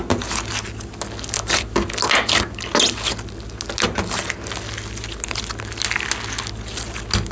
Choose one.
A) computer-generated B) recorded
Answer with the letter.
B